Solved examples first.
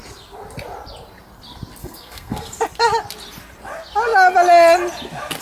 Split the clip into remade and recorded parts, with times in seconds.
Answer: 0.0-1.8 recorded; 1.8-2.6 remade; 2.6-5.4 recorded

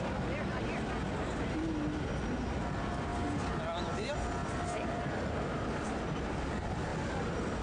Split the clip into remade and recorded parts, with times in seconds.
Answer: 0.0-7.6 recorded

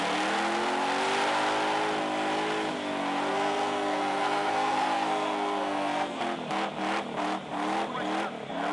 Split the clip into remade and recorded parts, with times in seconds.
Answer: 0.0-3.3 recorded; 3.3-6.2 remade; 6.2-8.7 recorded

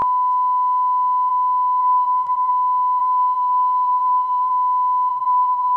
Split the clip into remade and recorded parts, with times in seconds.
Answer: 0.0-1.8 recorded; 1.8-2.5 remade; 2.5-3.0 recorded; 3.0-4.5 remade; 4.5-5.1 recorded; 5.1-5.8 remade

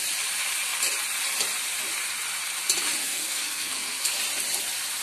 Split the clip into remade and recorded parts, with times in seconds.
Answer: 0.0-3.0 recorded; 3.0-4.2 remade; 4.2-5.0 recorded

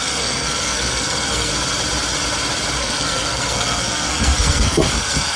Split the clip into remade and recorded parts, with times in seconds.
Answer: 0.0-1.5 remade; 1.5-2.8 recorded; 2.8-5.4 remade

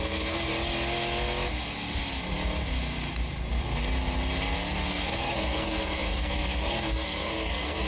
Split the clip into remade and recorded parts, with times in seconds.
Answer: 0.0-0.5 remade; 0.5-4.9 recorded; 4.9-7.9 remade